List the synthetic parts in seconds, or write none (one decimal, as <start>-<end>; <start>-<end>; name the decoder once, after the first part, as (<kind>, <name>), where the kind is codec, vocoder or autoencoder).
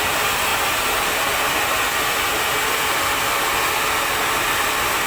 none